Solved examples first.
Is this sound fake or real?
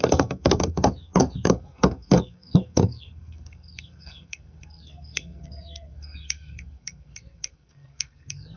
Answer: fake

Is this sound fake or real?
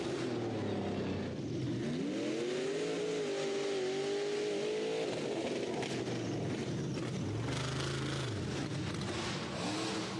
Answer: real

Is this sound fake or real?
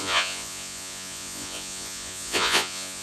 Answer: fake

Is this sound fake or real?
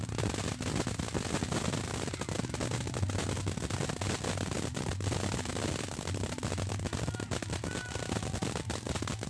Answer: real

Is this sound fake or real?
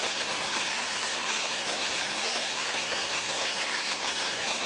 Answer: fake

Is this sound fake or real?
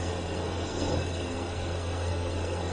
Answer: fake